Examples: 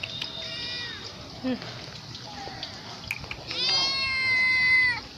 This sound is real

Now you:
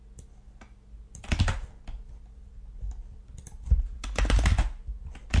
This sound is real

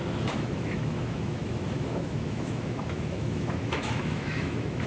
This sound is fake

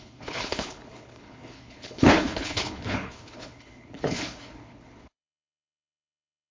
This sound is fake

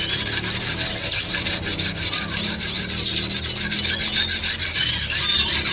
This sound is real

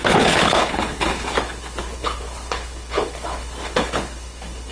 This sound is fake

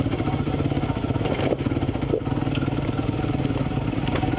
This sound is real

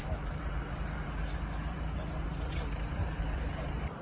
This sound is fake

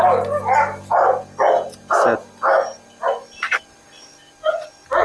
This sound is real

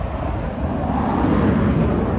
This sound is real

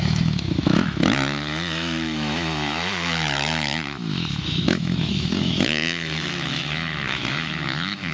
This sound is fake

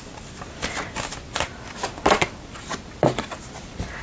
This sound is real